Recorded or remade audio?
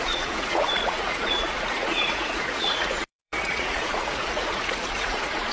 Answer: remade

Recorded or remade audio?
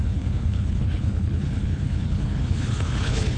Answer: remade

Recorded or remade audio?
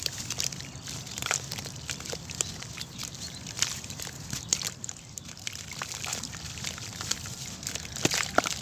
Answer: remade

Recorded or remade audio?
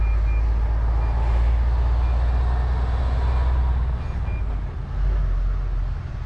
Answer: recorded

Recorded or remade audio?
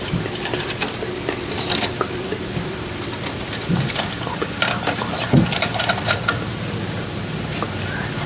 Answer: recorded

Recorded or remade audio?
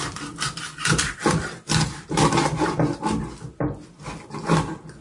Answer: recorded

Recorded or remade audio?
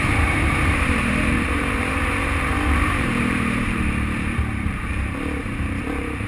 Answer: remade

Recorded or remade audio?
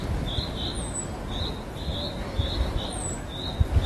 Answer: recorded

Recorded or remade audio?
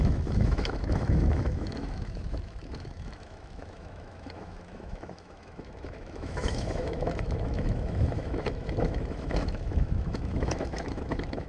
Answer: remade